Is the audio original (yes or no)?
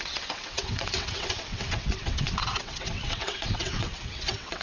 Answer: no